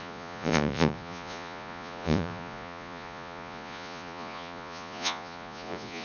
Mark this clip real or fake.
fake